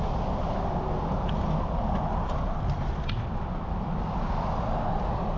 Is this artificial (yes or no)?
no